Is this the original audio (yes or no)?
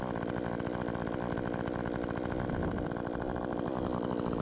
yes